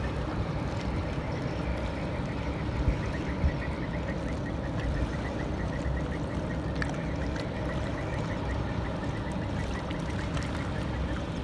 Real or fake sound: real